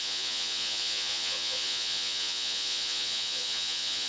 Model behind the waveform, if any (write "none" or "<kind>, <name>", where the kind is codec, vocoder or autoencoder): vocoder, Vocos